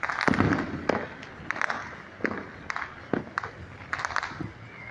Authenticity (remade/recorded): recorded